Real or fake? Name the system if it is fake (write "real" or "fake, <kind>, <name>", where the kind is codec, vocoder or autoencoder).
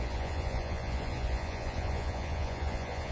fake, vocoder, Vocos